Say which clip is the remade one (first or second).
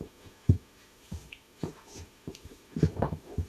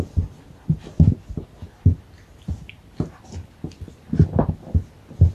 first